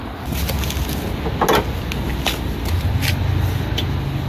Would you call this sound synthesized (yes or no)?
no